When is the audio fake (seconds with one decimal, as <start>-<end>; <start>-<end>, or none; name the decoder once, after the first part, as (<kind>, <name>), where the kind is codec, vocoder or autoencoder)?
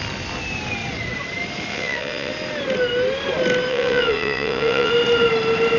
1.7-2.3 (vocoder, WaveNeXt); 3.7-4.9